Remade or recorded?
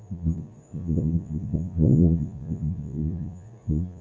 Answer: remade